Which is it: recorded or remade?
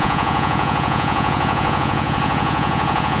remade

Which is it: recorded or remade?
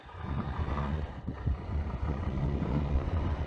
remade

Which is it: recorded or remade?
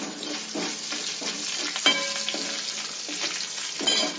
recorded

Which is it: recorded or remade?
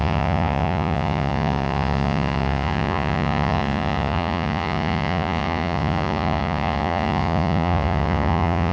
remade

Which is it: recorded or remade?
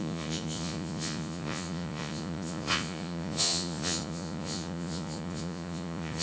remade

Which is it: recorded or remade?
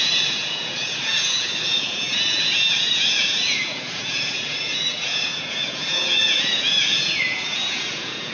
remade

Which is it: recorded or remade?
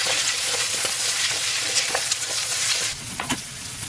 remade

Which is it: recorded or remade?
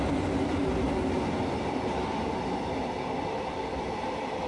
recorded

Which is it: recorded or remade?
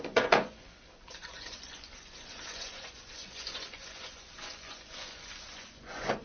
remade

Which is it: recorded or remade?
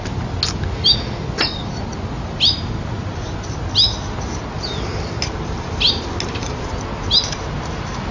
recorded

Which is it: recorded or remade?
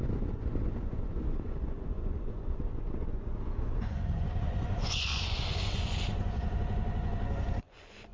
remade